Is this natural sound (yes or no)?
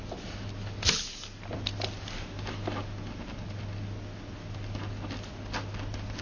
yes